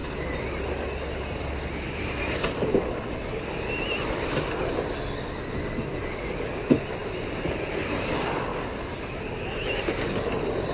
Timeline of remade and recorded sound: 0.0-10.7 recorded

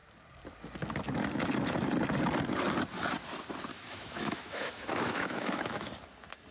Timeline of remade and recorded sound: 0.0-3.7 recorded; 3.7-5.9 remade; 5.9-6.5 recorded

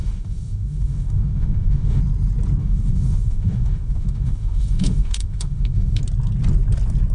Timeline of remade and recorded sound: 0.0-2.0 remade; 2.0-2.6 recorded; 2.6-6.0 remade; 6.0-7.1 recorded

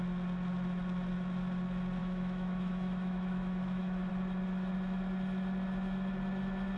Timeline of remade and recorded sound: 0.0-2.0 recorded; 2.0-4.1 remade; 4.1-6.8 recorded

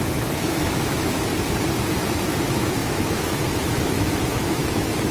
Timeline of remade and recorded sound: 0.0-1.3 remade; 1.3-2.3 recorded; 2.3-5.1 remade